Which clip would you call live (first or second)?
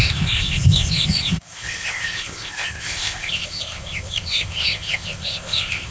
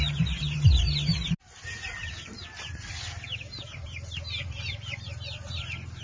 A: second